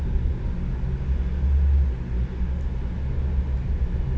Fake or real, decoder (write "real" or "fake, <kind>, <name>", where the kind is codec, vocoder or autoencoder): real